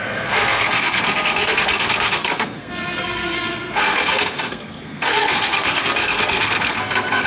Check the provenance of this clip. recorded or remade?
remade